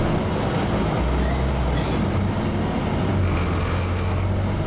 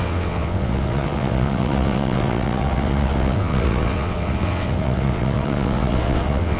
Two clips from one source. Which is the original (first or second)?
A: first